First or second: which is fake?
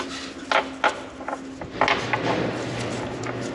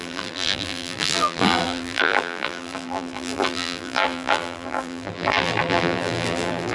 second